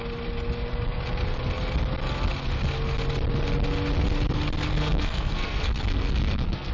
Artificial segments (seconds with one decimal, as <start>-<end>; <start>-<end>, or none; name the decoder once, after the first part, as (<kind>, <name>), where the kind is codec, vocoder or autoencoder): 4.7-6.7 (codec, SNAC)